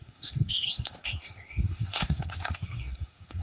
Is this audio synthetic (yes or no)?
yes